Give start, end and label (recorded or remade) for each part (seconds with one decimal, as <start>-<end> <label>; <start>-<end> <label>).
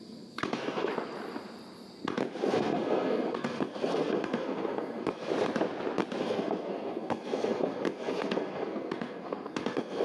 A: 0.0-0.9 remade; 0.9-2.4 recorded; 2.4-5.3 remade; 5.3-6.2 recorded; 6.2-10.0 remade